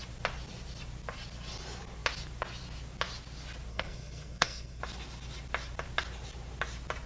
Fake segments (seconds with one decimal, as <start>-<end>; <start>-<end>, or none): 3.7-4.8